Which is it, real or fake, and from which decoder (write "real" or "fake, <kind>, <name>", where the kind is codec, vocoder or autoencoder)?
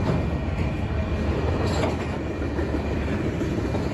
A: real